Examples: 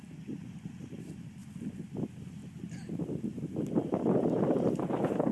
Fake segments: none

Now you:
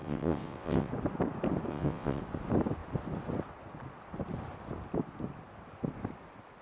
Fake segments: 0.0-0.9 (vocoder, WaveNeXt); 1.7-2.2